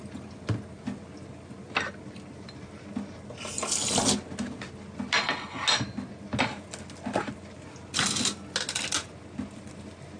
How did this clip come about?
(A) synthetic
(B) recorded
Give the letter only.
B